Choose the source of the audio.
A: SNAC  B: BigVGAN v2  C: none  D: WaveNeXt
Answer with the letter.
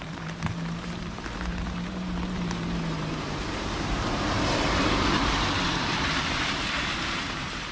B